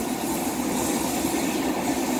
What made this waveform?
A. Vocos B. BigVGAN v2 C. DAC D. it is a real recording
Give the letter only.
D